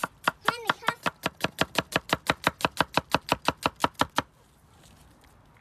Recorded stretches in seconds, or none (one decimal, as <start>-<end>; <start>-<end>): 3.4-3.8; 4.4-5.6